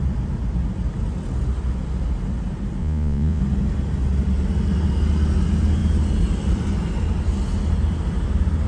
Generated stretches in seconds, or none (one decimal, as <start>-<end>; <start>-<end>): 2.8-3.4